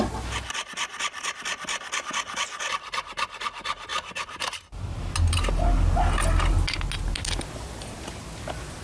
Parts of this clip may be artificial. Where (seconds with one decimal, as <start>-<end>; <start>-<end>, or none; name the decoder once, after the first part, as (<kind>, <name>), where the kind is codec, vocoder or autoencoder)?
none